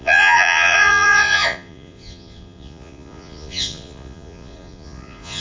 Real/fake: fake